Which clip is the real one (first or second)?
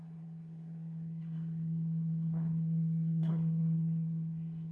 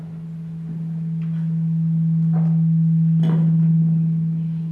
second